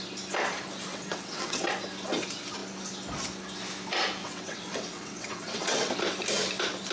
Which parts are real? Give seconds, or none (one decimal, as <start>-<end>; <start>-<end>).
0.0-0.9; 1.7-4.2; 5.9-6.9